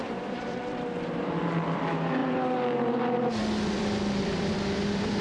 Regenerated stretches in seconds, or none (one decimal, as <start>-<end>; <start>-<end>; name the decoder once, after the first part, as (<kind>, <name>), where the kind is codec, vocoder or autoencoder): 0.0-0.6 (vocoder, BigVGAN v2); 1.2-2.2; 3.4-5.2